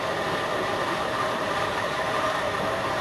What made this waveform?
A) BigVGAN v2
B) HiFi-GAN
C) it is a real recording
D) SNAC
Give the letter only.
A